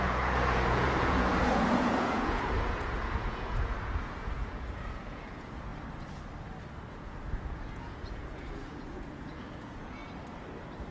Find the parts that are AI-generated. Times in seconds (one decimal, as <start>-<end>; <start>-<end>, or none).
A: 0.0-5.7; 6.9-10.0